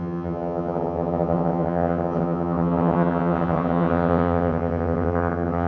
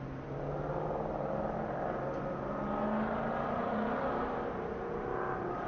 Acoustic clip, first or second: second